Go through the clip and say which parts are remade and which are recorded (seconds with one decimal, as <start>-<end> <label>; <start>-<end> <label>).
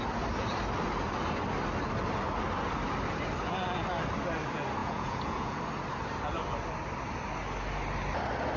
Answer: 0.0-4.8 recorded; 4.8-5.6 remade; 5.6-8.6 recorded